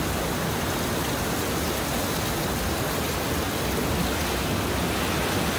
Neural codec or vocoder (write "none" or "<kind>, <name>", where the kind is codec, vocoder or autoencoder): none